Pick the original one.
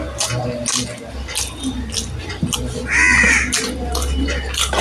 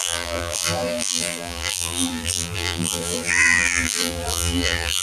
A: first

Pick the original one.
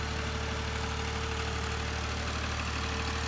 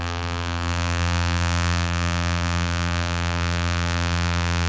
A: first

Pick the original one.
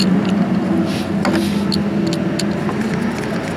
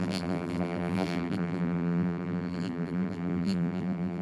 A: first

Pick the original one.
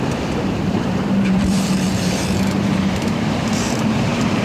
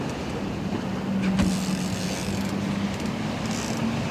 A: second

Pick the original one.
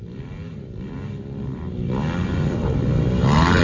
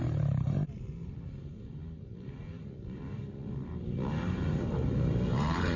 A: first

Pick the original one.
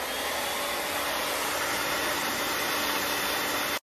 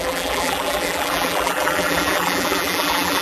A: first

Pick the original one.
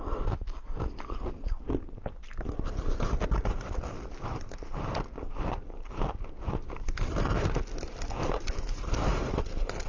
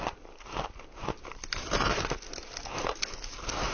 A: second